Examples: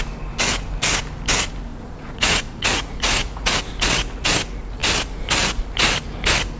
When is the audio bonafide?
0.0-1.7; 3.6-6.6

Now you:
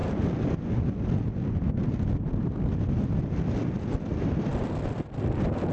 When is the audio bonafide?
0.0-5.7

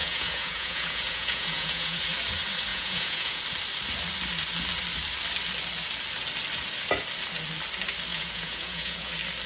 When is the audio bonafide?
2.0-2.7; 3.4-8.1; 9.1-9.5

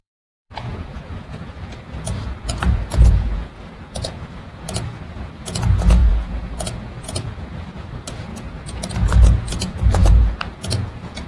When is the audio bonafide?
none